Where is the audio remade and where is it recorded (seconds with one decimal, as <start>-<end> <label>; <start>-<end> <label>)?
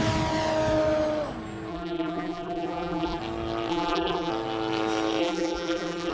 0.0-1.7 recorded; 1.7-3.2 remade; 3.2-3.7 recorded; 3.7-4.3 remade; 4.3-5.2 recorded; 5.2-6.1 remade